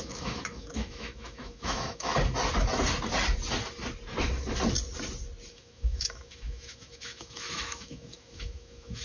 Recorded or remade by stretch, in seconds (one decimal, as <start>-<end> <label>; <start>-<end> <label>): 0.0-2.1 remade; 2.1-5.5 recorded; 5.5-9.0 remade